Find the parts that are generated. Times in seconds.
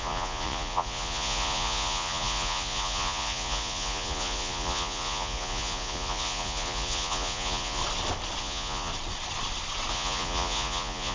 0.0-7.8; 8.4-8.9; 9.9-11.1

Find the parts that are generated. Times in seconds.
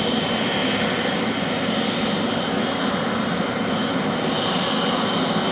0.0-0.6; 3.1-3.8; 4.9-5.5